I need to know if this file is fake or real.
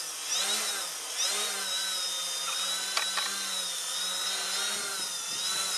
real